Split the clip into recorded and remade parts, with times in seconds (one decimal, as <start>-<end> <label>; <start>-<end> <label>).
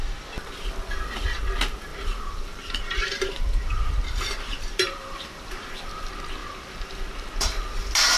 0.0-1.9 recorded; 1.9-5.8 remade; 5.8-6.4 recorded; 6.4-6.9 remade; 6.9-8.2 recorded